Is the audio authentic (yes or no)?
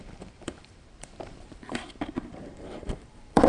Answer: no